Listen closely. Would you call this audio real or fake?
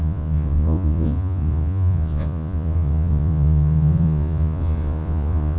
fake